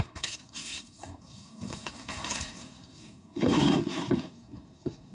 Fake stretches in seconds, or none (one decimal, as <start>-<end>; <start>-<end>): 0.0-5.1